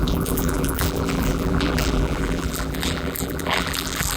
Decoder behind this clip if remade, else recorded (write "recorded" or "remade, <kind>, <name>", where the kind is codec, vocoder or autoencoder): remade, vocoder, BigVGAN v2